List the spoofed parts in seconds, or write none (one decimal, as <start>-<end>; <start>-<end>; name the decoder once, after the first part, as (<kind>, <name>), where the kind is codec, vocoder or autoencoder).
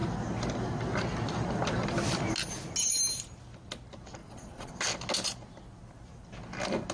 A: 4.2-4.7 (vocoder, Vocos)